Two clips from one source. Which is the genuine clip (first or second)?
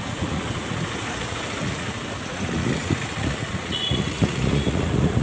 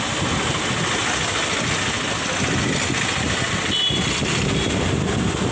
second